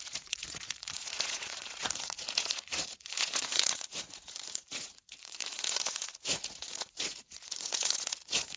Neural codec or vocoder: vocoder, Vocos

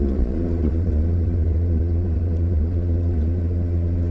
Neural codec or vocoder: vocoder, Vocos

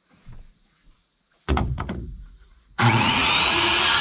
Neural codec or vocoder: vocoder, Vocos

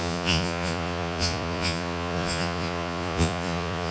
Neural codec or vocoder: vocoder, Vocos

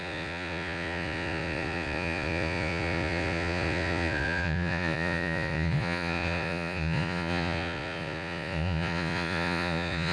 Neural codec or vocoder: vocoder, Vocos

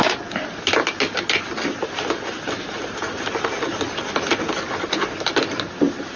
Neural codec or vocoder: none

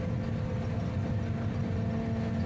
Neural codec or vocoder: none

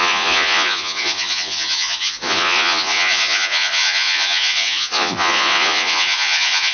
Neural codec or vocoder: vocoder, Vocos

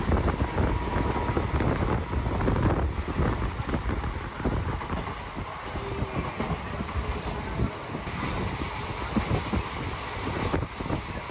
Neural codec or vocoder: none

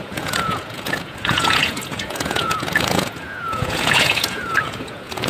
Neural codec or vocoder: vocoder, Vocos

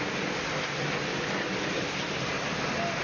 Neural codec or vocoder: none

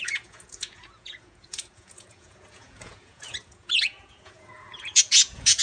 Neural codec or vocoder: vocoder, Vocos